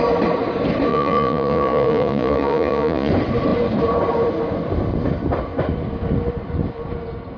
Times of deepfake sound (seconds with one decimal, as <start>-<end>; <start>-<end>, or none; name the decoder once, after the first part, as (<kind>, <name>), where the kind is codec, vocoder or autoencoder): 0.9-3.1 (vocoder, Vocos)